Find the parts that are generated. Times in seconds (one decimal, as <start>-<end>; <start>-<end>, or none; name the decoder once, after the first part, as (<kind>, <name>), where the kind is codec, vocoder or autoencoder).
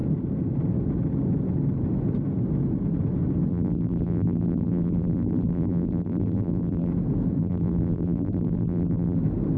3.5-6.9 (vocoder, BigVGAN v2); 7.4-9.2